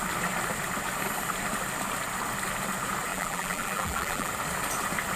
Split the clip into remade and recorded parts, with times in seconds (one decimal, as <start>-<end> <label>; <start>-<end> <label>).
0.0-3.1 recorded; 3.1-4.3 remade; 4.3-5.2 recorded